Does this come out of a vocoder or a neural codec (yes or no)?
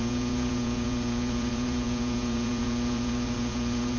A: yes